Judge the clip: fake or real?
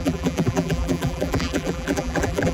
fake